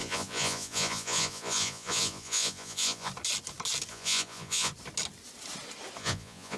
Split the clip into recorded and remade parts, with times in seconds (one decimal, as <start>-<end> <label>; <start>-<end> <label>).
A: 0.0-3.1 remade; 3.1-3.9 recorded; 3.9-4.7 remade; 4.7-6.0 recorded; 6.0-6.6 remade

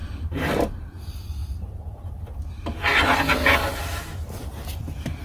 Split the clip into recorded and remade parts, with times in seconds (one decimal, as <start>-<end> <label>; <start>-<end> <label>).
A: 0.0-0.8 remade; 0.8-1.4 recorded; 1.4-2.4 remade; 2.4-5.2 recorded

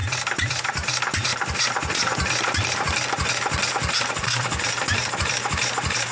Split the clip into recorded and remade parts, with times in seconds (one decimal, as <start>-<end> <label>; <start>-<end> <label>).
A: 0.0-3.7 recorded; 3.7-6.1 remade

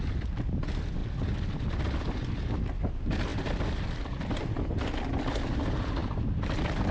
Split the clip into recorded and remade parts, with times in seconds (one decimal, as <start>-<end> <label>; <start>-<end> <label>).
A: 0.0-6.9 recorded

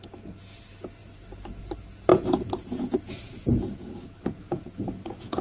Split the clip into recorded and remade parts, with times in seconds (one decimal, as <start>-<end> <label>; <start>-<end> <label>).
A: 0.0-2.1 recorded; 2.1-5.4 remade

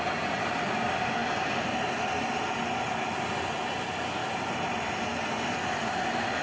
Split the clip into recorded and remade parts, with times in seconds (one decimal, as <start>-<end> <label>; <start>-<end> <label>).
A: 0.0-6.4 recorded

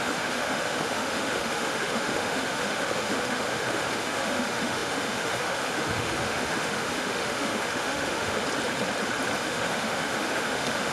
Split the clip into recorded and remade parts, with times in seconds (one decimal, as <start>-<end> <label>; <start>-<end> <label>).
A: 0.0-8.4 remade; 8.4-9.4 recorded; 9.4-10.9 remade

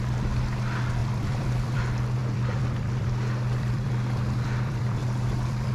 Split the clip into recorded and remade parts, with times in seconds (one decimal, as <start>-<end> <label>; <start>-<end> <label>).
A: 0.0-1.0 recorded; 1.0-1.8 remade; 1.8-2.2 recorded; 2.2-5.7 remade